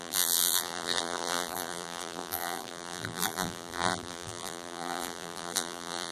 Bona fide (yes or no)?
no